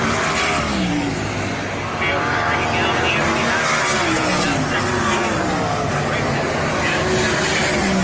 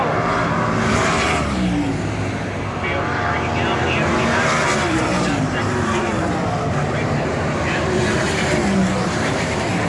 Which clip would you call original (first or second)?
first